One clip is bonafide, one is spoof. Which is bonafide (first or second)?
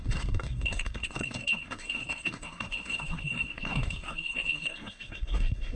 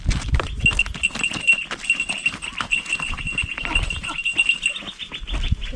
second